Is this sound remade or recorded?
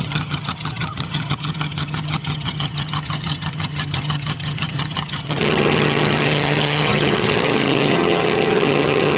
remade